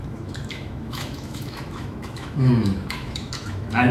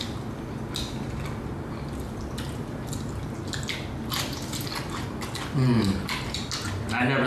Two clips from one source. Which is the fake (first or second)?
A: first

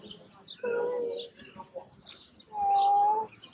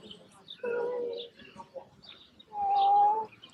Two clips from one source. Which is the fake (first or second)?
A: second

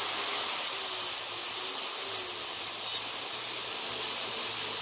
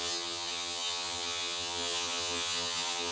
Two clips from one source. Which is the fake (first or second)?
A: second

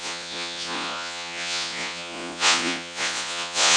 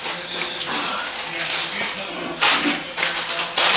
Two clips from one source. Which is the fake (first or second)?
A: first